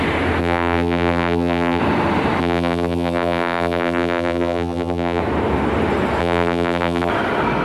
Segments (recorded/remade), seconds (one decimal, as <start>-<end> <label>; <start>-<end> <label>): 0.0-0.4 recorded; 0.4-1.8 remade; 1.8-2.4 recorded; 2.4-5.2 remade; 5.2-6.2 recorded; 6.2-7.1 remade; 7.1-7.6 recorded